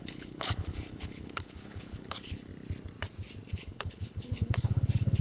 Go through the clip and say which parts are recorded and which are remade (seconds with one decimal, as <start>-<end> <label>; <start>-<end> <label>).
0.0-2.5 remade; 2.5-3.5 recorded; 3.5-5.2 remade